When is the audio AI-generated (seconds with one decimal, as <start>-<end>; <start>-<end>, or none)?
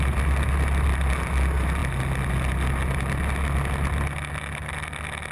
none